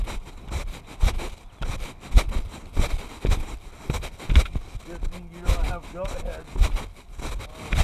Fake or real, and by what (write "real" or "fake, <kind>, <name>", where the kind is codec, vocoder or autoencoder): real